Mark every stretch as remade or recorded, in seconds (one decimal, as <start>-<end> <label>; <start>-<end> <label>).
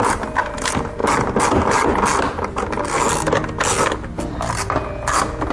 0.0-5.5 recorded